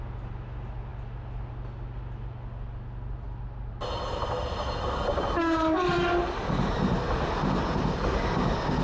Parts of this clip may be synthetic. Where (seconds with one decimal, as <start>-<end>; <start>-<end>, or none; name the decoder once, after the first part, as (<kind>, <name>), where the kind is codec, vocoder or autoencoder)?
none